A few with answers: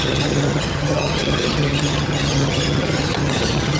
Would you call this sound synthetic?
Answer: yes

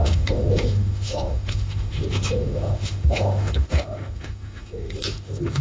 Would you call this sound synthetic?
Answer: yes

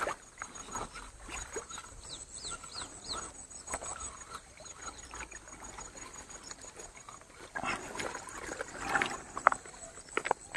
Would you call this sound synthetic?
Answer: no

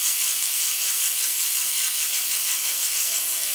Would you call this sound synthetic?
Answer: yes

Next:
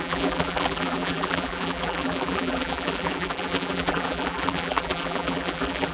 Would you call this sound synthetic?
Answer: yes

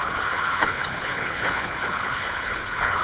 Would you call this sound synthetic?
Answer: yes